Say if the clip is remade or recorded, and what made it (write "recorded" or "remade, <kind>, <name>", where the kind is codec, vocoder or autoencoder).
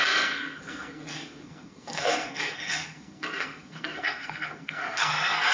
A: remade, codec, SNAC